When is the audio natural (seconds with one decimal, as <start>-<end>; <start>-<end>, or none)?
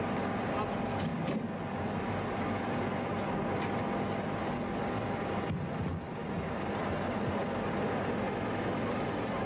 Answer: 0.0-1.1; 2.1-6.2; 7.3-9.5